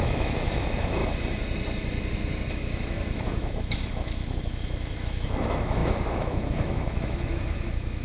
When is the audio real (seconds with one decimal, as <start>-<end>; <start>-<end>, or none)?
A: 1.0-2.5